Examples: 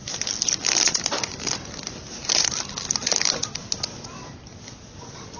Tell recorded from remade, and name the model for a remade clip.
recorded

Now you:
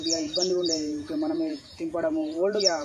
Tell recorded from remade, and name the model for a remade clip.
remade, vocoder, Vocos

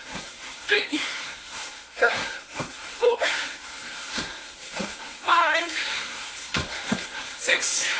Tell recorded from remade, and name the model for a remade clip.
remade, codec, SNAC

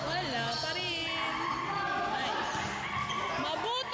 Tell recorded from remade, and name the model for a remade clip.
recorded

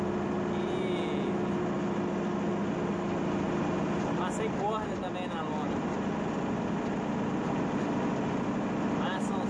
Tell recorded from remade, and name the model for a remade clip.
recorded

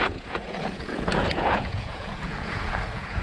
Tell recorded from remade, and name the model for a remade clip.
remade, vocoder, Vocos